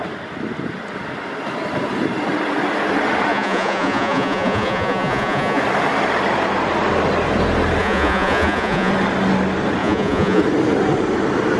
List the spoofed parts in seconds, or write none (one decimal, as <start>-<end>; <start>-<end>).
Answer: 3.3-5.6; 7.8-8.9; 9.8-10.4